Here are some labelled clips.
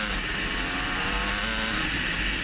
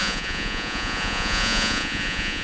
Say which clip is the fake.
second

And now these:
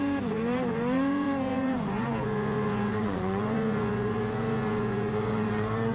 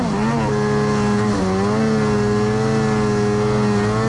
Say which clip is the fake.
first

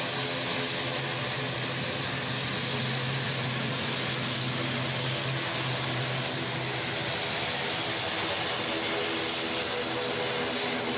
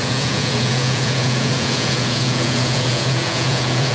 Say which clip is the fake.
second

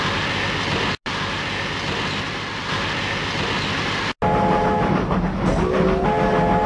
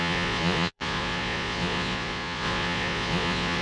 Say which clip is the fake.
second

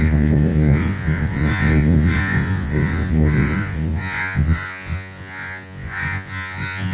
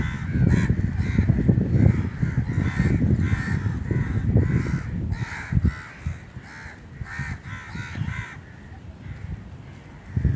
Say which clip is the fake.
first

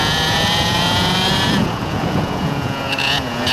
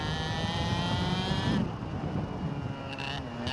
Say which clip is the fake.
first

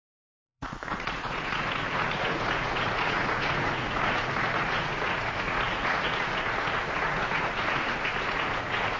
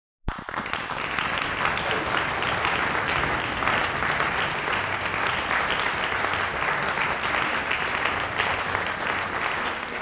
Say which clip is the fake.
first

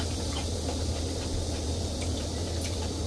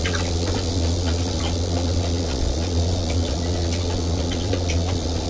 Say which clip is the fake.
second